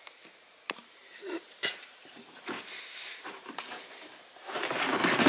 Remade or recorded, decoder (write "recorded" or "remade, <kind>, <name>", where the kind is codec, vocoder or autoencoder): remade, vocoder, BigVGAN v2